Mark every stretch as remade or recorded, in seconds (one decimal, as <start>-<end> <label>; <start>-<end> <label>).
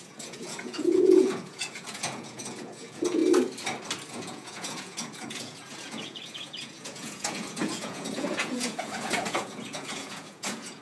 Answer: 0.0-3.2 remade; 3.2-4.1 recorded; 4.1-10.8 remade